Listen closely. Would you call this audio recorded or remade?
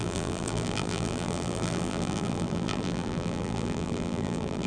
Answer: remade